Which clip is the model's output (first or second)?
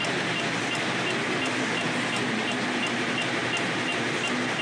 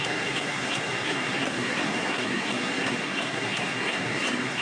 second